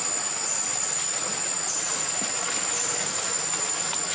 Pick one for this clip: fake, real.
real